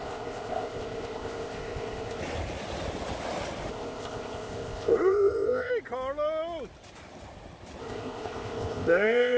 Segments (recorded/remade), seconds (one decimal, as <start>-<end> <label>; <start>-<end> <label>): 0.0-2.2 remade; 2.2-3.7 recorded; 3.7-5.7 remade; 5.7-7.8 recorded; 7.8-9.4 remade